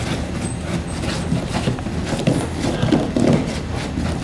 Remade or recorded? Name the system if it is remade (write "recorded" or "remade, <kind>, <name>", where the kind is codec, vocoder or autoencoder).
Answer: recorded